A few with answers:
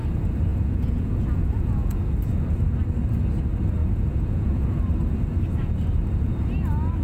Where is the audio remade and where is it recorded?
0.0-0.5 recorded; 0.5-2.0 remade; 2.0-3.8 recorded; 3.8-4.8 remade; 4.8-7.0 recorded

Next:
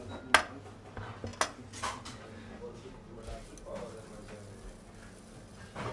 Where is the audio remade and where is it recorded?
0.0-5.9 recorded

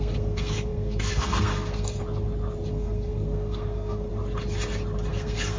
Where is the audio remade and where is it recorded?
0.0-2.0 remade; 2.0-2.7 recorded; 2.7-4.1 remade; 4.1-5.1 recorded; 5.1-5.6 remade

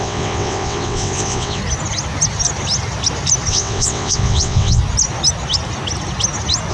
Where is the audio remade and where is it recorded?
0.0-1.6 remade; 1.6-3.5 recorded; 3.5-4.8 remade; 4.8-6.7 recorded

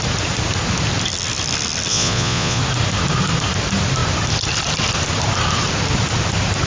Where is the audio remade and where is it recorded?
0.0-1.9 recorded; 1.9-2.6 remade; 2.6-6.7 recorded

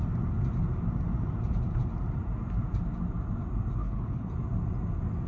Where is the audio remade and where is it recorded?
0.0-3.8 recorded; 3.8-4.3 remade; 4.3-5.3 recorded